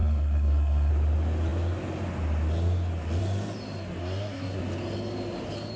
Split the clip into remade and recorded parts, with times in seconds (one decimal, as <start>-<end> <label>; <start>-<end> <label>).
0.0-0.9 remade; 0.9-4.0 recorded; 4.0-4.6 remade; 4.6-5.8 recorded

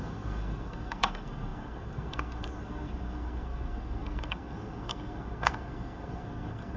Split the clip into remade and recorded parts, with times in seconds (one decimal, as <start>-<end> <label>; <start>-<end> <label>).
0.0-6.8 remade

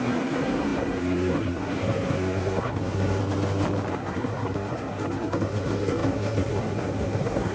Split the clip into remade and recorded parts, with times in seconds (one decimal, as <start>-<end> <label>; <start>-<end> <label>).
0.0-3.2 remade; 3.2-3.9 recorded; 3.9-7.5 remade

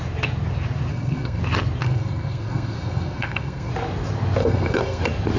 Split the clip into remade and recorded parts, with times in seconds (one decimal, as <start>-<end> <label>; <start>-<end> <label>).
0.0-0.9 recorded; 0.9-1.4 remade; 1.4-1.8 recorded; 1.8-3.7 remade; 3.7-4.4 recorded; 4.4-5.0 remade; 5.0-5.4 recorded